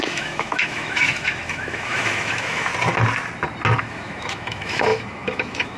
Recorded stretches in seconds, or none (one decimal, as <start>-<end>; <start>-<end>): 2.7-3.8